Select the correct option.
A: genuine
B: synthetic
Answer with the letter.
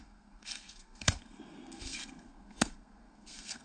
B